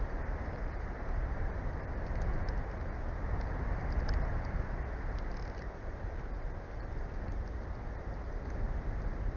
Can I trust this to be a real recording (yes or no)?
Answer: yes